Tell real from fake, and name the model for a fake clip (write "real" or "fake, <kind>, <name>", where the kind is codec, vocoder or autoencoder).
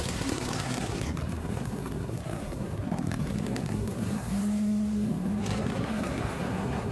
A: fake, codec, SNAC